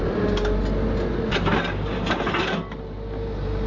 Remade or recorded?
recorded